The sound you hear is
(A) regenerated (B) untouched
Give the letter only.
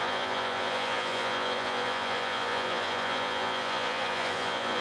A